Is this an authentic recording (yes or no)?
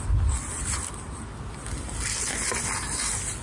yes